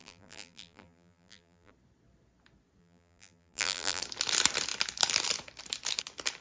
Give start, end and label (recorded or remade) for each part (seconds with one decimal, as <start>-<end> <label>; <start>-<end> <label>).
0.0-1.7 remade; 1.7-2.8 recorded; 2.8-4.0 remade; 4.0-6.4 recorded

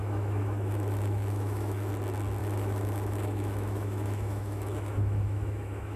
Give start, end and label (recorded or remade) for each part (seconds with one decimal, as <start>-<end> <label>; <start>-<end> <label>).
0.0-1.9 remade; 1.9-2.4 recorded; 2.4-6.0 remade

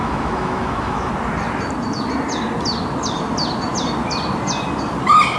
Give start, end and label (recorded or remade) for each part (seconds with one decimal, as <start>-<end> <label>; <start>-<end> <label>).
0.0-1.1 remade; 1.1-5.4 recorded

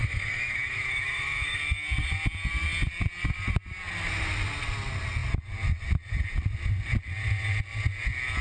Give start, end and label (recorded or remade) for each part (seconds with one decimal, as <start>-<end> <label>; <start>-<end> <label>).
0.0-1.6 remade; 1.6-8.4 recorded

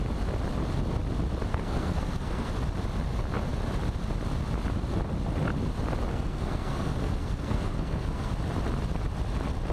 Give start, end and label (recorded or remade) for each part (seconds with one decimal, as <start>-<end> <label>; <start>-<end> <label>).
0.0-1.5 recorded; 1.5-2.5 remade; 2.5-6.1 recorded; 6.1-8.3 remade; 8.3-9.7 recorded